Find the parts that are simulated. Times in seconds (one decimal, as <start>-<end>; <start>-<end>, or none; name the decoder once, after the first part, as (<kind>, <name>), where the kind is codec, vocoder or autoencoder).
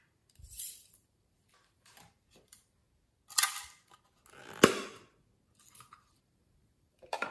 0.0-2.8 (vocoder, BigVGAN v2); 5.9-7.3